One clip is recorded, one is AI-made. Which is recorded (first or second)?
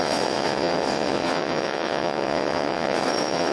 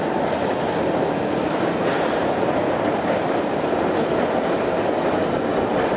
second